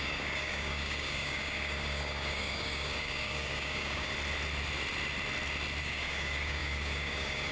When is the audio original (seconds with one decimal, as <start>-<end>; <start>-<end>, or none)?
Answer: 4.1-5.8

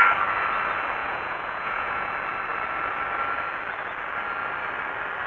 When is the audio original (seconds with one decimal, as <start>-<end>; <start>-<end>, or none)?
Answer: 0.0-1.0; 2.1-5.3

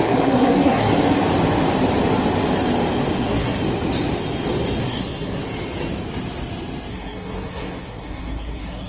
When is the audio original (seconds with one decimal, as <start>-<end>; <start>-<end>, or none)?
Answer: 0.9-3.2; 3.6-4.8; 5.4-6.9